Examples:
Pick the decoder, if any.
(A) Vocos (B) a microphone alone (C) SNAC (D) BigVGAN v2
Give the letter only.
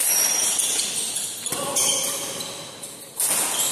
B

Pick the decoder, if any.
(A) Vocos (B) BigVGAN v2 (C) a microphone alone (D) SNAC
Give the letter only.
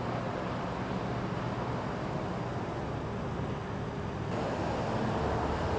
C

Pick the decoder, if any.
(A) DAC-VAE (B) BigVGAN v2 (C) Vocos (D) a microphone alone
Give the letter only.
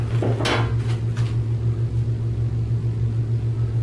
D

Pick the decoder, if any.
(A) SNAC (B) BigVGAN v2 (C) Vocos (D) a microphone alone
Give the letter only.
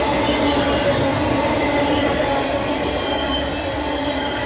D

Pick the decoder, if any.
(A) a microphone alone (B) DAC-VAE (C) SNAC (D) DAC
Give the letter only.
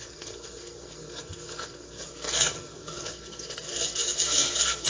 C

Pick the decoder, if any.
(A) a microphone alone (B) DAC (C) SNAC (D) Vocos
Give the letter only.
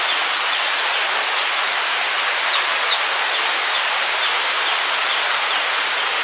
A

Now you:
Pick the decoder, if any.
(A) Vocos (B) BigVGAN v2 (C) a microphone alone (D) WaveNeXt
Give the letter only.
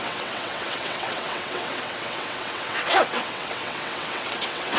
D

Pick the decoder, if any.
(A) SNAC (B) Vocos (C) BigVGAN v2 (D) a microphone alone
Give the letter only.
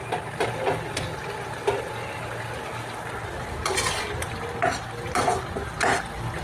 D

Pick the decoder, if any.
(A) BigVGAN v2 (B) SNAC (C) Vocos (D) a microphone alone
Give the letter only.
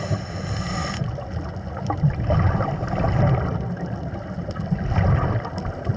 D